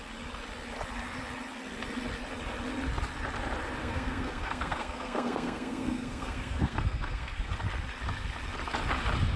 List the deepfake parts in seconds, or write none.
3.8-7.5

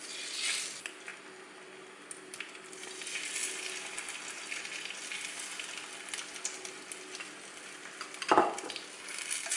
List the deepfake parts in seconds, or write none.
none

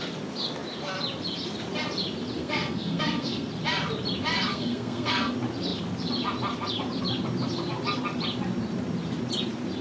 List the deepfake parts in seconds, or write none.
2.4-3.5; 4.5-5.1

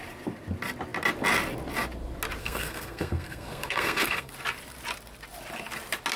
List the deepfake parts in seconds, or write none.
2.4-4.3

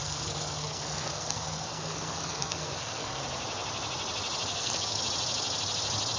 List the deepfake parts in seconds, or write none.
0.0-3.2; 4.5-5.0

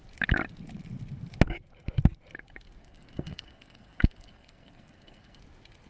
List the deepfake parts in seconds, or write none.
2.8-5.4